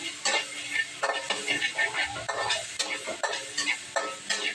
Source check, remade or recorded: recorded